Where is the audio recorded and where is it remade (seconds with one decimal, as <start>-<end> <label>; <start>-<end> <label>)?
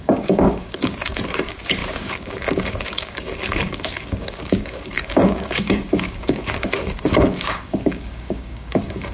0.0-9.1 remade